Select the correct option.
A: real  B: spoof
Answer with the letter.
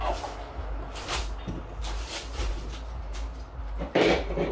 A